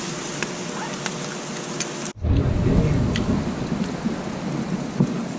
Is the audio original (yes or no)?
yes